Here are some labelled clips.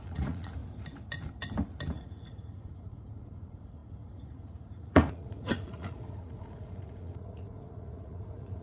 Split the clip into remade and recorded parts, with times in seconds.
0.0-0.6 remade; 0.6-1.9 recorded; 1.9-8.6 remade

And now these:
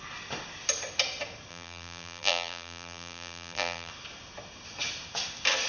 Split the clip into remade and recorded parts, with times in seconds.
0.0-1.5 recorded; 1.5-3.9 remade; 3.9-5.7 recorded

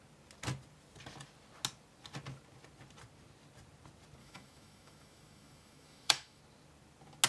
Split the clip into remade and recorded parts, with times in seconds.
0.0-4.2 recorded; 4.2-6.4 remade; 6.4-7.3 recorded

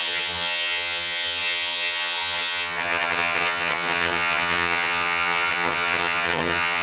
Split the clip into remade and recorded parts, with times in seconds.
0.0-6.8 remade